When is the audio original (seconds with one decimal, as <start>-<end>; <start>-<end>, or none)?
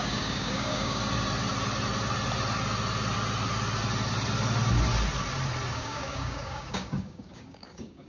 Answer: 1.0-5.7